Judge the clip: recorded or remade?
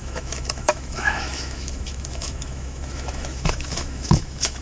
remade